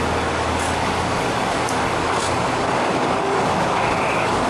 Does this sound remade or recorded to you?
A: remade